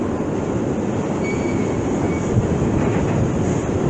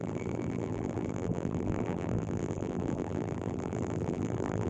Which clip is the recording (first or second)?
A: first